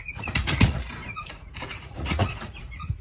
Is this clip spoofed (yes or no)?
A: yes